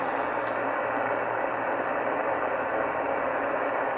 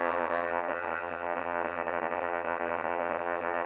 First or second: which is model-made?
second